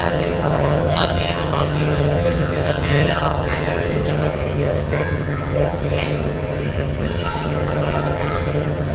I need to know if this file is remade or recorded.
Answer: remade